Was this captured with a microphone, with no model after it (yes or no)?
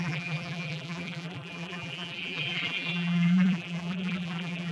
no